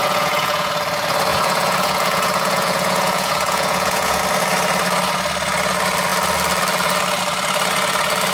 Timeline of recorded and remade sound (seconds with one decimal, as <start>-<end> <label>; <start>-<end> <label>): 0.0-0.7 remade; 0.7-1.3 recorded; 1.3-4.2 remade; 4.2-8.3 recorded